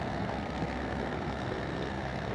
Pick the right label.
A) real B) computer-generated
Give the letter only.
B